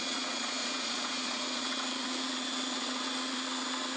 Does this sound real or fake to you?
fake